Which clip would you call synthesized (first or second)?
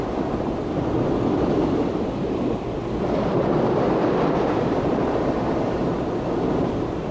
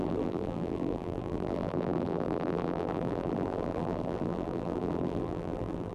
second